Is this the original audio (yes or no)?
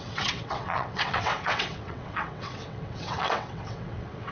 no